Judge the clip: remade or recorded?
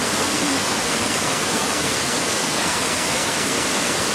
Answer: remade